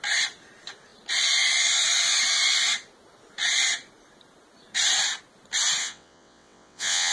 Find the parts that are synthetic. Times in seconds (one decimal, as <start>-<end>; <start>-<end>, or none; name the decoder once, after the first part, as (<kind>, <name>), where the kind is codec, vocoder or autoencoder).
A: 5.8-7.1 (vocoder, WaveNeXt)